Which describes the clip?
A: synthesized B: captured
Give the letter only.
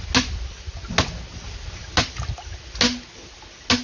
B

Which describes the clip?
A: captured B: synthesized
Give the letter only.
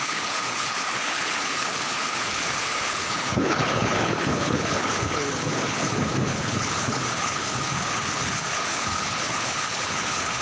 B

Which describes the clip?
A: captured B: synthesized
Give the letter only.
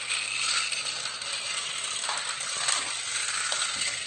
A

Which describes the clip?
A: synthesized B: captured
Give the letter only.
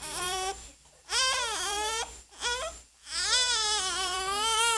A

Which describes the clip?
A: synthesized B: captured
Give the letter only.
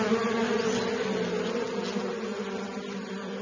B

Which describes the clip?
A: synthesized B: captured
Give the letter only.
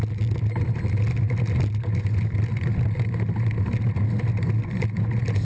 B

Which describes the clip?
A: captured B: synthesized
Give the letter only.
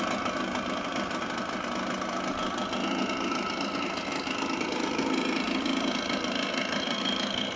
A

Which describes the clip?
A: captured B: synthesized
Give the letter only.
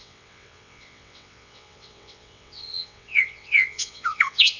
B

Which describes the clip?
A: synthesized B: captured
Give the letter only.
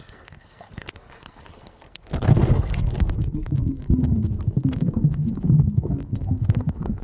A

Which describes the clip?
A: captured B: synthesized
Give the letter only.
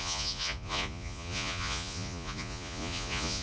B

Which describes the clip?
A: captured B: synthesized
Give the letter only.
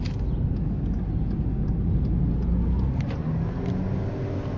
A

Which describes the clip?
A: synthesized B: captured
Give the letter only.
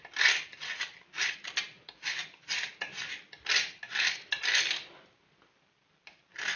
B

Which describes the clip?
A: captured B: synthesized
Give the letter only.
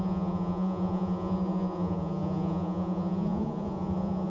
B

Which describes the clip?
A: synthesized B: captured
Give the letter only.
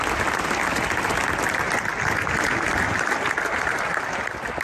B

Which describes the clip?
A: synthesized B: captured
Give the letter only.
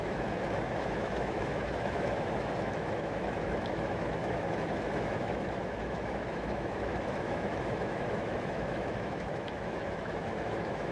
A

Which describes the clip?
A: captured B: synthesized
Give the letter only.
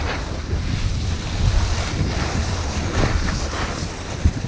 A